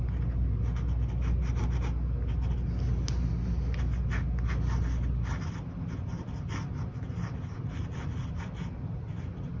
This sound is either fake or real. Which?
real